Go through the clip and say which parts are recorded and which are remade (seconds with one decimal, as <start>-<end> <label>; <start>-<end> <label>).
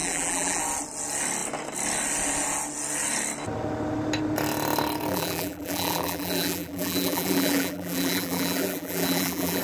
0.0-0.6 remade; 0.6-5.1 recorded; 5.1-9.6 remade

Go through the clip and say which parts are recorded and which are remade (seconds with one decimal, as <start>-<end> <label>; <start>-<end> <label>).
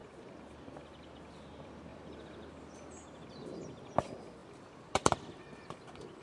0.0-1.9 recorded; 1.9-2.6 remade; 2.6-4.4 recorded; 4.4-5.8 remade; 5.8-6.2 recorded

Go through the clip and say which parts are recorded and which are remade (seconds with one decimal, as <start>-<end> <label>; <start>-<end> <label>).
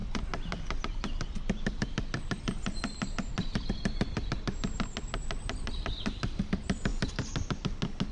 0.0-0.8 recorded; 0.8-6.9 remade; 6.9-8.1 recorded